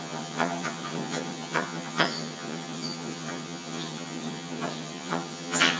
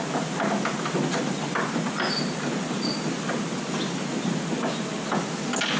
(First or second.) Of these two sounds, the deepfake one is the first